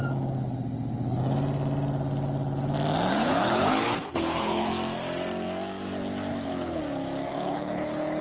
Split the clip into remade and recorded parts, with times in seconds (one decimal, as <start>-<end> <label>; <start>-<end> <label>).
0.0-3.1 recorded; 3.1-4.7 remade; 4.7-6.3 recorded; 6.3-6.8 remade; 6.8-7.3 recorded; 7.3-8.2 remade